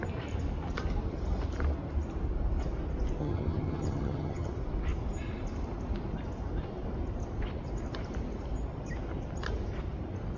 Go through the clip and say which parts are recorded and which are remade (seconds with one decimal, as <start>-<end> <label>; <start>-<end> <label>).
0.0-3.2 recorded; 3.2-4.5 remade; 4.5-10.4 recorded